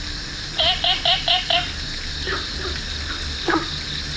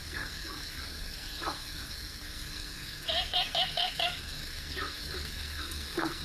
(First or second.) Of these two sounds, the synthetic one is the second